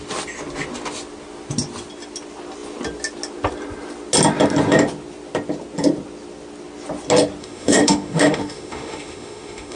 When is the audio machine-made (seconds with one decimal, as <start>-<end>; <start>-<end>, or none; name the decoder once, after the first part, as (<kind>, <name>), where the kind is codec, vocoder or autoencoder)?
7.4-9.8 (autoencoder, DAC-VAE)